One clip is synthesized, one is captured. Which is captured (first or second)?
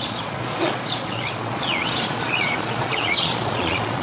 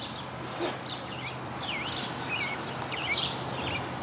second